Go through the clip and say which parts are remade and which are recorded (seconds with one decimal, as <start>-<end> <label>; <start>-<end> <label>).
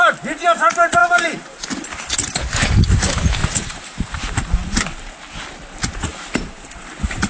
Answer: 0.0-1.0 recorded; 1.0-1.6 remade; 1.6-3.4 recorded; 3.4-4.2 remade; 4.2-6.1 recorded; 6.1-6.7 remade; 6.7-7.3 recorded